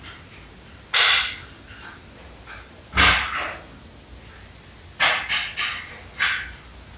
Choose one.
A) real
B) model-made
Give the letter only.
A